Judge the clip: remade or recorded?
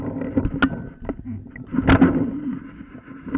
recorded